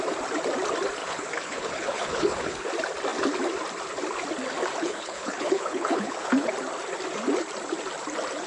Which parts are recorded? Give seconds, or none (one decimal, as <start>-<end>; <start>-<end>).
0.0-1.0; 2.7-4.8; 6.5-8.5